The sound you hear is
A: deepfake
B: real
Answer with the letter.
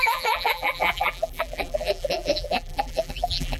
A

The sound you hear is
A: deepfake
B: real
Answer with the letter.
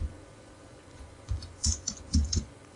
A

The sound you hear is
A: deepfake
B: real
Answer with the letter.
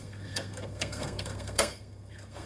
A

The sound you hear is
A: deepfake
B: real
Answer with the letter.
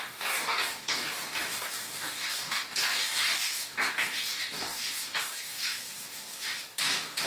A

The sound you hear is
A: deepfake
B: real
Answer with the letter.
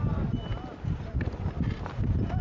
B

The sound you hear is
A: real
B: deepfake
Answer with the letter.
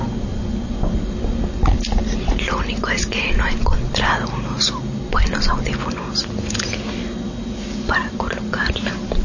A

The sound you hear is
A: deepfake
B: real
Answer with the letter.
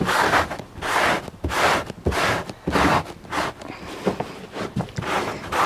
A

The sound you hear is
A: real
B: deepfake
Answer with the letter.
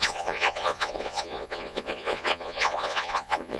B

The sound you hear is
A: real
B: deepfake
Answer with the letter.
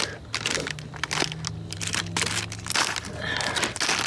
A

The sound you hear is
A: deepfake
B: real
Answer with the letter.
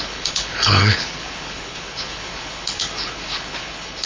A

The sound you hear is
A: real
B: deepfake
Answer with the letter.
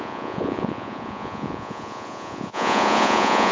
B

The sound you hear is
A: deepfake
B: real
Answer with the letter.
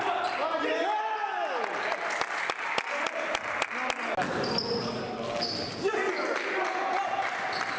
B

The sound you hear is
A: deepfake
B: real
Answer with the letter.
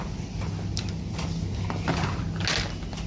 B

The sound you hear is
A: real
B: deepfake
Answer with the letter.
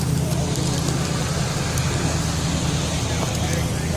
B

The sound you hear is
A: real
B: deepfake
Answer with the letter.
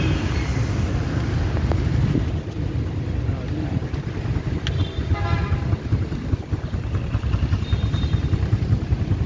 A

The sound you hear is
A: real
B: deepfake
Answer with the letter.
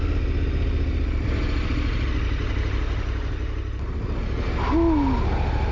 A